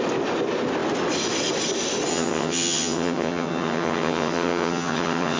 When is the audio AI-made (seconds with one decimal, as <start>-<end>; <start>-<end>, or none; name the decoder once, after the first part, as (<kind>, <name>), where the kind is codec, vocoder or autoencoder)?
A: 2.1-5.4 (vocoder, HiFi-GAN)